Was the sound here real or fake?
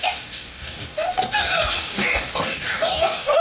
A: fake